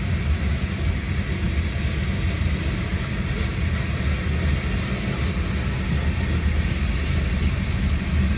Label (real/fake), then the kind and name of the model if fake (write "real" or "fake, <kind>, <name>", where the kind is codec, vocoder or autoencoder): real